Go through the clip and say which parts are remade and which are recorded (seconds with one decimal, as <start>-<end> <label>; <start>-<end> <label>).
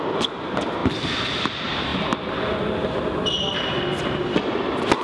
0.0-5.0 recorded